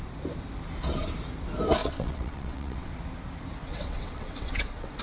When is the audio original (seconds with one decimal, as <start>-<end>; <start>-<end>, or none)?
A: 0.0-1.8; 2.9-3.6